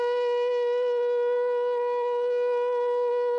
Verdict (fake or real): fake